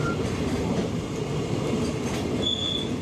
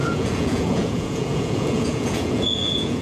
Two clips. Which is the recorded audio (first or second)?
first